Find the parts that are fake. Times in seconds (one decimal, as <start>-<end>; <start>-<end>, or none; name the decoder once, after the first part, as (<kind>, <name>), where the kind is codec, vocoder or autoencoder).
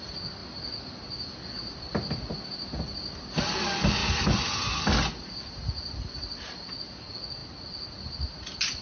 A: 4.0-5.3 (vocoder, BigVGAN v2)